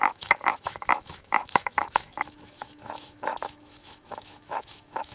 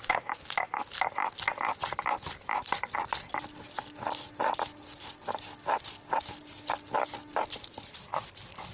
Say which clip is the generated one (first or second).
first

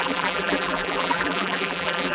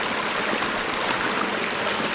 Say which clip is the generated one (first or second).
first